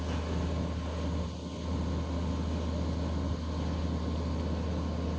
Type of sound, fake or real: real